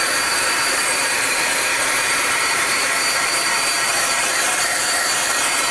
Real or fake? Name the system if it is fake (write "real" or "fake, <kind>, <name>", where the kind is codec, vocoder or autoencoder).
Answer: fake, vocoder, BigVGAN v2